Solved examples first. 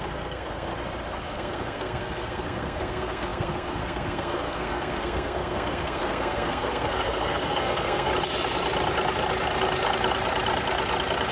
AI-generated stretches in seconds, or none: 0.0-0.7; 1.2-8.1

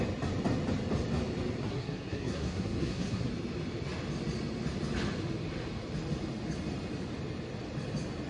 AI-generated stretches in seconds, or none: 1.6-3.3

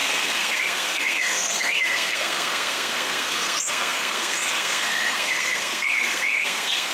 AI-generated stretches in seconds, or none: 0.0-6.9

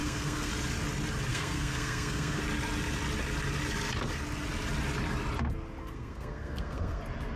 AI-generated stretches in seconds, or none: 0.0-0.5; 1.3-2.4; 5.8-7.0